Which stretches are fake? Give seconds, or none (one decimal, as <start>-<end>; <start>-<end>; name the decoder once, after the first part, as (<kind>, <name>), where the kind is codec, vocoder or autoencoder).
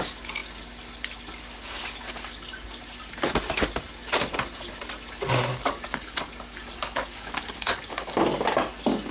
5.5-8.2 (codec, DAC)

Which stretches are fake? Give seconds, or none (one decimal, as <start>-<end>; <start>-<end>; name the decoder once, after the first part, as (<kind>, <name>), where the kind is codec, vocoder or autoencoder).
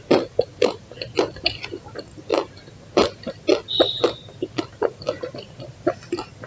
none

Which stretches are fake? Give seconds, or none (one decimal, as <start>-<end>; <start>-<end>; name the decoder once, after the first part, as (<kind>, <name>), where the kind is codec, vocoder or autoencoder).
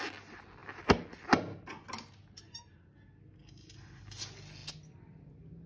none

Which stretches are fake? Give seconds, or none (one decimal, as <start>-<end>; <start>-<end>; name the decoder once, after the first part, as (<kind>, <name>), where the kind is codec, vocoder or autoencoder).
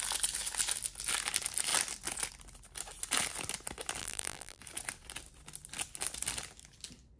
4.0-4.6 (vocoder, BigVGAN v2)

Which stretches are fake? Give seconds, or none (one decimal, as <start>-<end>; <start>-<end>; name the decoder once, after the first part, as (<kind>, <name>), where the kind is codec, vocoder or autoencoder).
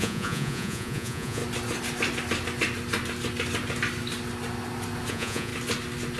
0.0-1.4 (vocoder, Vocos); 5.1-5.5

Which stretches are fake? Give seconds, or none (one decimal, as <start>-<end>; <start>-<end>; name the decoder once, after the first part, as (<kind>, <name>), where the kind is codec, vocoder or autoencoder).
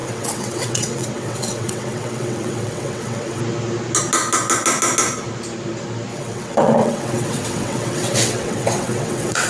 0.0-3.4 (vocoder, WaveNeXt); 6.1-9.5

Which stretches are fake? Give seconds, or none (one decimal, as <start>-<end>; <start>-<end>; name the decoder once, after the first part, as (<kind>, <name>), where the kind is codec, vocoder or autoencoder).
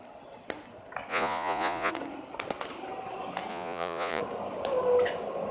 1.1-1.9 (vocoder, Vocos); 3.5-4.2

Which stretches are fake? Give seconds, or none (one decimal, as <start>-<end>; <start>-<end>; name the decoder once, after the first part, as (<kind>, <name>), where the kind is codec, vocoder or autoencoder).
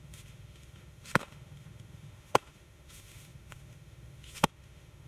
0.0-5.1 (autoencoder, DAC-VAE)